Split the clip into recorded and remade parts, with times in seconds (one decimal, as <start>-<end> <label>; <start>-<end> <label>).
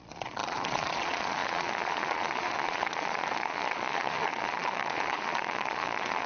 0.0-6.3 remade